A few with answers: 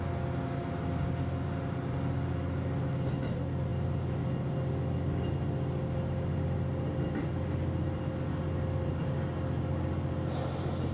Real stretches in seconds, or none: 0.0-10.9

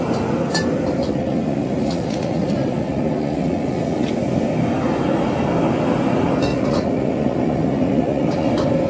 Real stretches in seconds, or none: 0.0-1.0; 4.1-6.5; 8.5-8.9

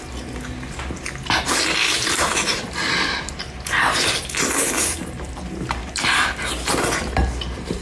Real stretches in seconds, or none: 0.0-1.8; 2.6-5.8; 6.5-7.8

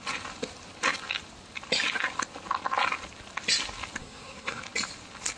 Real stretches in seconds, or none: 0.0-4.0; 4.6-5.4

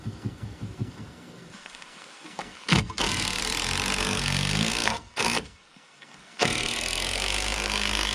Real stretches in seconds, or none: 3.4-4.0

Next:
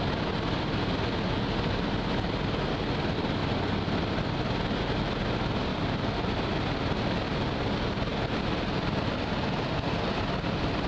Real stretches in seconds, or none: 0.0-3.4; 4.2-5.7; 6.5-8.1

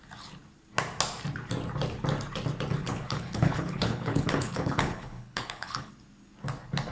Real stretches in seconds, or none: 0.0-2.8; 5.9-6.9